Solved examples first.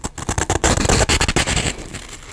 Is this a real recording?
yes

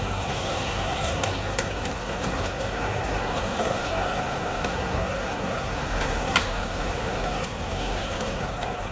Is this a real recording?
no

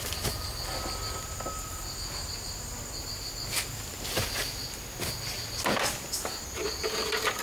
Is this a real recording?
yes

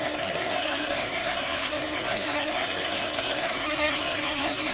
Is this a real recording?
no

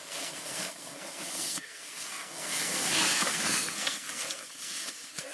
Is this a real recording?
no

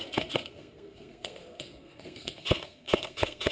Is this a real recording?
no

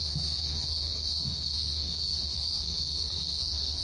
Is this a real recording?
no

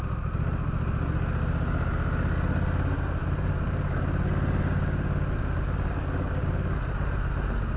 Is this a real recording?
yes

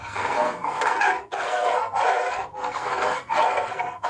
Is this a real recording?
no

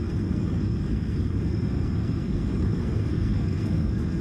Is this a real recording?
no